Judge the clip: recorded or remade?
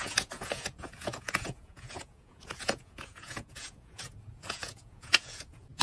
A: remade